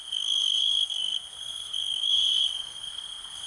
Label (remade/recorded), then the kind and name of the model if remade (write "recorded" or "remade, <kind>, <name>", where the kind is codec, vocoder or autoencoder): remade, codec, SNAC